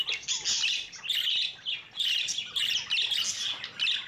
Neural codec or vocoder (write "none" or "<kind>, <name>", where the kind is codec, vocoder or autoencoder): none